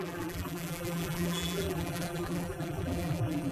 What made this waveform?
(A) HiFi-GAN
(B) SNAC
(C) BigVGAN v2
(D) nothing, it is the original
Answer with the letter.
C